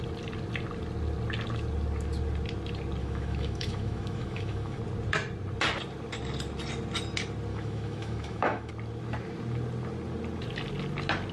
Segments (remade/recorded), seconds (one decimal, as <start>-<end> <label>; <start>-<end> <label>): 0.0-3.0 recorded; 3.0-4.8 remade; 4.8-7.5 recorded; 7.5-8.7 remade; 8.7-11.3 recorded